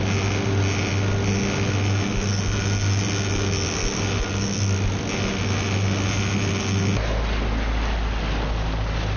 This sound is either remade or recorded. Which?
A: recorded